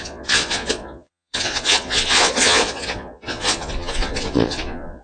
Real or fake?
fake